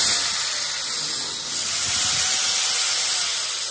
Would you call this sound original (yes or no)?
yes